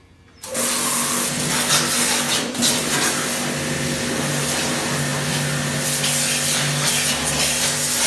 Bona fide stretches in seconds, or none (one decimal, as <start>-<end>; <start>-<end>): 0.0-8.1